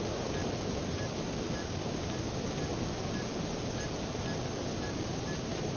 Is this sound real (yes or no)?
yes